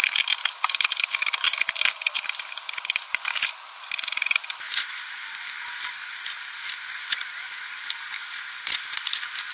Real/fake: real